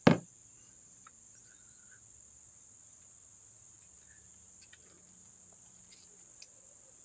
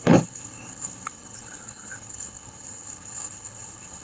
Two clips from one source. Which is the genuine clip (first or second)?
first